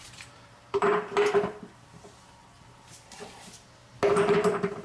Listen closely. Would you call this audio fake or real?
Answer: fake